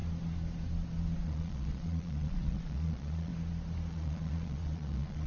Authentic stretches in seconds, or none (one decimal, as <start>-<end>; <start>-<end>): 0.0-1.2; 3.3-3.9